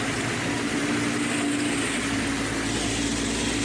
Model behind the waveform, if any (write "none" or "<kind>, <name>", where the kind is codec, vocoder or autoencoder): none